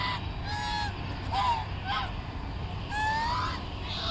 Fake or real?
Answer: real